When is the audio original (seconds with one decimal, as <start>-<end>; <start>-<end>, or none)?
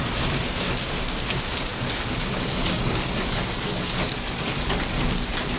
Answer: 0.0-1.7; 5.1-5.6